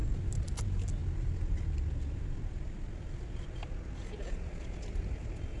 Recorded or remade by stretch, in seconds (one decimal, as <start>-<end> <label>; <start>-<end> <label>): 0.0-5.6 recorded